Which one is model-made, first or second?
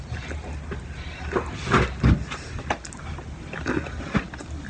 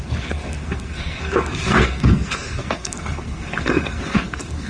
second